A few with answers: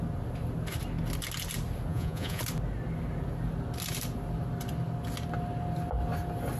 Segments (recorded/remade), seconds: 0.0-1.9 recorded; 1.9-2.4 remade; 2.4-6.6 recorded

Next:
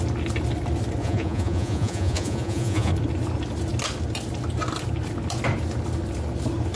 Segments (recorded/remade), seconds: 0.0-1.0 recorded; 1.0-2.9 remade; 2.9-6.8 recorded

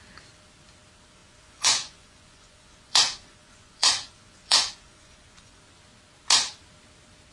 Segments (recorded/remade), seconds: 0.0-1.2 recorded; 1.2-5.6 remade; 5.6-7.3 recorded

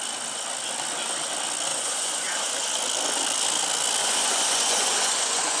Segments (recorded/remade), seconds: 0.0-1.7 recorded; 1.7-2.5 remade; 2.5-4.0 recorded; 4.0-5.6 remade

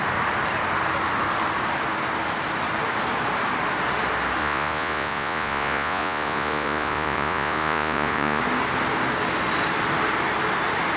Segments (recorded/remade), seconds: 0.0-4.4 recorded; 4.4-8.4 remade; 8.4-11.0 recorded

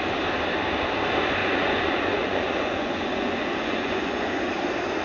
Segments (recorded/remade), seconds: 0.0-1.4 recorded; 1.4-4.4 remade; 4.4-5.0 recorded

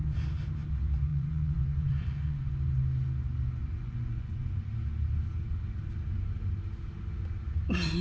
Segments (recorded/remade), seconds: 0.0-1.1 recorded; 1.1-2.5 remade; 2.5-3.6 recorded; 3.6-4.7 remade; 4.7-8.0 recorded